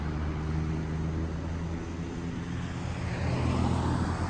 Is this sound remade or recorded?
recorded